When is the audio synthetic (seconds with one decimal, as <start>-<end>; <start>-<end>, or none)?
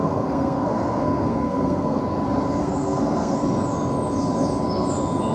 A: 0.0-2.0; 2.6-3.4